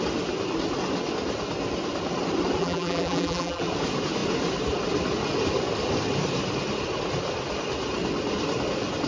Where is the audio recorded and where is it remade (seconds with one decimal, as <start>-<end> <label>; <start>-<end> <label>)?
0.0-2.6 recorded; 2.6-3.6 remade; 3.6-9.1 recorded